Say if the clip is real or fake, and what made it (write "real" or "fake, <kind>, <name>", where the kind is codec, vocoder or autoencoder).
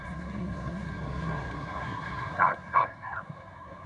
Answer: fake, codec, SNAC